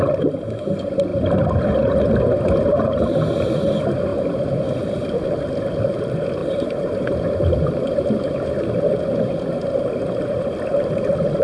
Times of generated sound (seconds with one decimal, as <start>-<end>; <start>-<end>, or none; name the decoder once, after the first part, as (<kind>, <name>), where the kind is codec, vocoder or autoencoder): 6.4-8.8 (vocoder, BigVGAN v2)